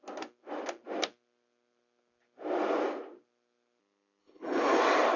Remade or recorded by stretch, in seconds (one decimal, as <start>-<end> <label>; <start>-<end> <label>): 0.0-4.2 recorded; 4.2-4.8 remade; 4.8-5.2 recorded